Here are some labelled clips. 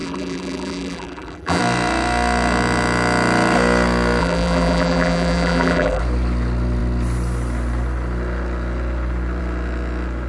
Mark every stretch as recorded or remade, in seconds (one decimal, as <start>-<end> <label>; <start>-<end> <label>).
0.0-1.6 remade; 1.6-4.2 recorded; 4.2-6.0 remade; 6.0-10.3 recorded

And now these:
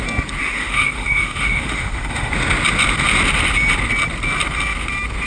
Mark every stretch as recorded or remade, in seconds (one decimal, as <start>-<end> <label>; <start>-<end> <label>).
0.0-0.4 recorded; 0.4-2.3 remade; 2.3-5.3 recorded

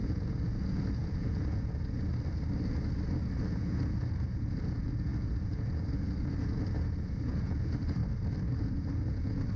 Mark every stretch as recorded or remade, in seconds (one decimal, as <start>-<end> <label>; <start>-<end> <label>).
0.0-2.1 remade; 2.1-3.5 recorded; 3.5-8.0 remade; 8.0-8.6 recorded; 8.6-9.6 remade

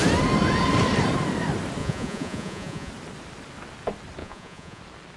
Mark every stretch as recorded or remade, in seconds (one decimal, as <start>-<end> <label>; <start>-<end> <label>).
0.0-1.8 recorded; 1.8-2.9 remade; 2.9-4.2 recorded; 4.2-4.8 remade; 4.8-5.2 recorded

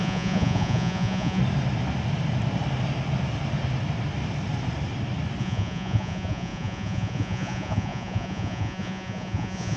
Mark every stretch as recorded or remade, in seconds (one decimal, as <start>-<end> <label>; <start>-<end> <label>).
0.0-1.4 remade; 1.4-5.4 recorded; 5.4-9.8 remade

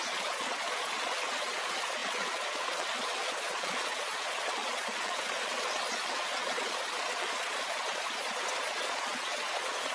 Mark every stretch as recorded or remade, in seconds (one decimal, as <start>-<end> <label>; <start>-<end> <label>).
0.0-9.9 remade